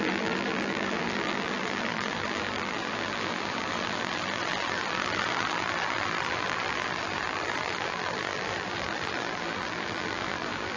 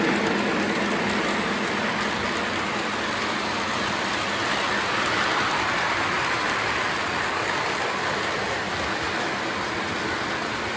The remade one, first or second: first